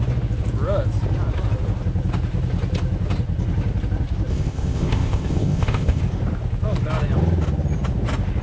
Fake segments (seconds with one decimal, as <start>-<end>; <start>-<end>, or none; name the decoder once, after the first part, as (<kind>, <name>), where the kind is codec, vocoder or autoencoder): 4.3-6.0 (codec, ZipCodec)